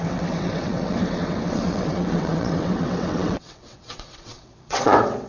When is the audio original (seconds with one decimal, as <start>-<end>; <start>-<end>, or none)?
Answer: none